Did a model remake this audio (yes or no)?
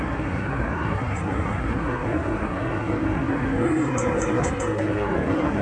yes